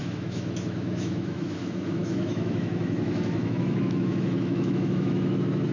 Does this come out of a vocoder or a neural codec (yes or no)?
yes